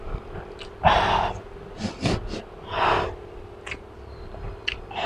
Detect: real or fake real